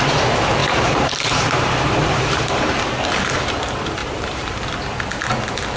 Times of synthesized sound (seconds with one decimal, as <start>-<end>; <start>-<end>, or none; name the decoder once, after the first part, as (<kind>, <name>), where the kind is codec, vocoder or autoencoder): 0.6-2.7 (vocoder, BigVGAN v2); 4.0-4.7